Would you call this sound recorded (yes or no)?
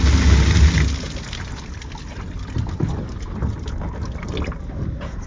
yes